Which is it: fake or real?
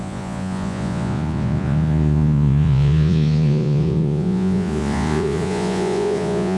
fake